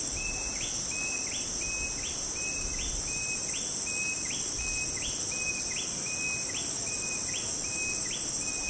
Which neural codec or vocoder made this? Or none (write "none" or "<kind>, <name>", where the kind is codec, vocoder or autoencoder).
none